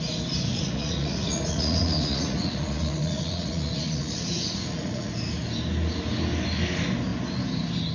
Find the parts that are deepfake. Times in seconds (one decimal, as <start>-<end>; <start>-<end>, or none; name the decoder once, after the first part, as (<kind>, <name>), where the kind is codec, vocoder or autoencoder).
0.5-5.1 (vocoder, Vocos)

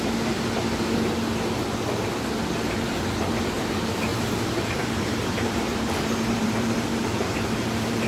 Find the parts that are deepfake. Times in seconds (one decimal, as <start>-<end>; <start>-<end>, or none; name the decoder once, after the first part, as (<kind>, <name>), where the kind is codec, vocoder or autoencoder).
4.1-8.1 (vocoder, BigVGAN v2)

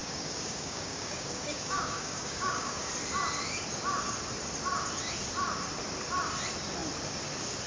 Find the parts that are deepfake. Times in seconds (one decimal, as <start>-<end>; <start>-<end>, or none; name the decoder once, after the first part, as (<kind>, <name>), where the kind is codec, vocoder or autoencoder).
0.0-2.9 (codec, DAC)

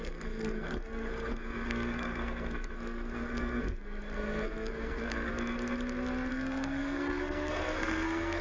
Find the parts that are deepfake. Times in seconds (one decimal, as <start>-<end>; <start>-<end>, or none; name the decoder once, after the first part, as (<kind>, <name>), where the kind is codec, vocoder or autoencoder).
0.0-5.3 (codec, SNAC); 6.3-8.4

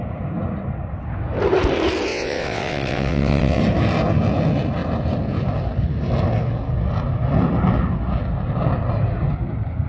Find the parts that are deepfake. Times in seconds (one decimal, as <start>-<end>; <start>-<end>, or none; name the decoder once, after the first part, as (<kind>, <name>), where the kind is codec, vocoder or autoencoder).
2.1-3.6 (vocoder, WaveNeXt)

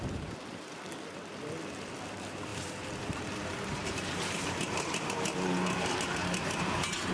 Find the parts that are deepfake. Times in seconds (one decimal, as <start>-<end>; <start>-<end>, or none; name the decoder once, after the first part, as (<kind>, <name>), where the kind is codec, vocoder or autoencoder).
2.5-7.1 (vocoder, BigVGAN v2)